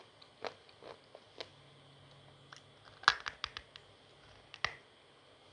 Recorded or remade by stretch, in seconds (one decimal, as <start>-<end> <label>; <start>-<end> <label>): 0.0-5.5 recorded